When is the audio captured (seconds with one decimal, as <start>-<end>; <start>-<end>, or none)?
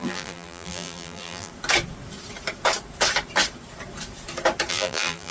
1.5-4.7